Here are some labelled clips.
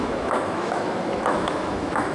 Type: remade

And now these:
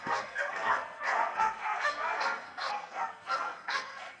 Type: remade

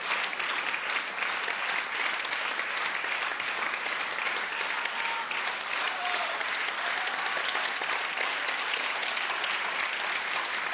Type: recorded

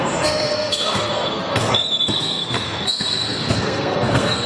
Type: remade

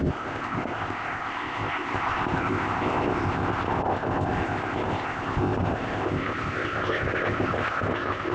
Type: remade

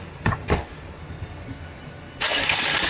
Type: recorded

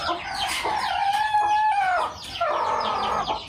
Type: recorded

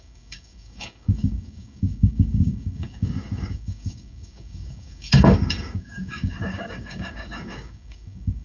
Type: remade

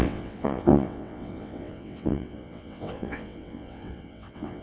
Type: remade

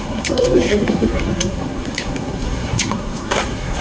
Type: remade